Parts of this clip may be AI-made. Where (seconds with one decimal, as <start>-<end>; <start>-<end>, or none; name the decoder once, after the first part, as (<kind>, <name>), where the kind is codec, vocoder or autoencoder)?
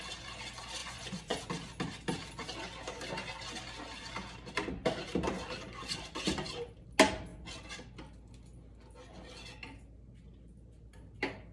0.8-1.5 (vocoder, Vocos)